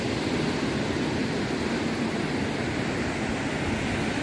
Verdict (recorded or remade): recorded